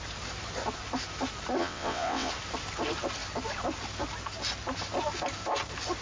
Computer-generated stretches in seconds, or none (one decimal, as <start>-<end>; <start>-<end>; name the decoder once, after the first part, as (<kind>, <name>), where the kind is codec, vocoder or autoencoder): 1.6-2.3 (vocoder, WaveNeXt)